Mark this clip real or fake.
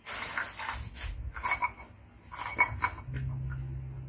real